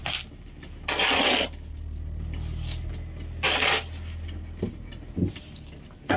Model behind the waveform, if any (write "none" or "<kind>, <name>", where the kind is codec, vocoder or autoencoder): none